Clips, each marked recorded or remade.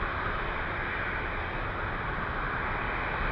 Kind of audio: recorded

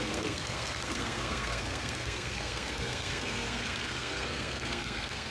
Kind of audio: remade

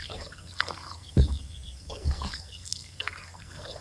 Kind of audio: remade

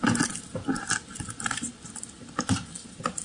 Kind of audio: recorded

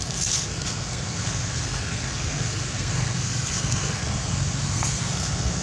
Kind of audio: remade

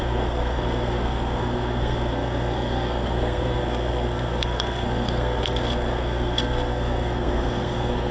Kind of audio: remade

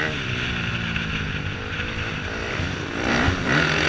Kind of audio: recorded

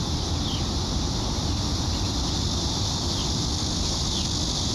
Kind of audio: recorded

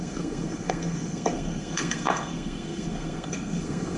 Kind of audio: remade